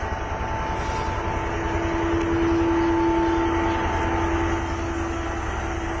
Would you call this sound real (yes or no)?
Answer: yes